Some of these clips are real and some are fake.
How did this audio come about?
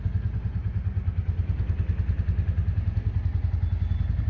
real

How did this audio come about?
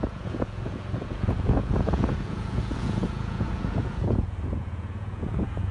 fake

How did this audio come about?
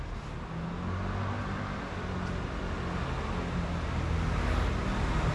real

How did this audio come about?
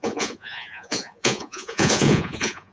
fake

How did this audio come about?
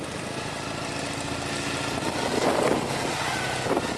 real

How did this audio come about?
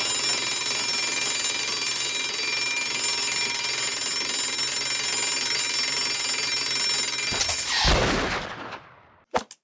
real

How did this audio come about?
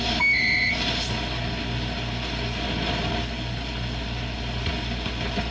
real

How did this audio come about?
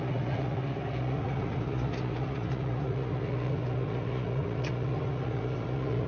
fake